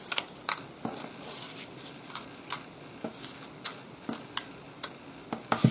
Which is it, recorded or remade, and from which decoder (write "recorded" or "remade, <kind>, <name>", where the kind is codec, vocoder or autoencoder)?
recorded